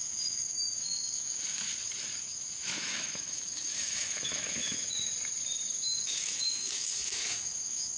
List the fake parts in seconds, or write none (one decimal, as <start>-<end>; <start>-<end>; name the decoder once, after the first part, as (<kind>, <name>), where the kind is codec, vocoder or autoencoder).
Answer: 0.0-1.7 (autoencoder, DAC-VAE); 2.2-5.1; 5.7-8.0